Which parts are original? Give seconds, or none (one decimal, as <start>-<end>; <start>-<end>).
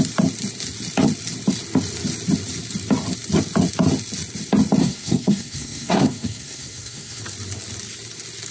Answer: 0.0-4.8; 7.2-8.5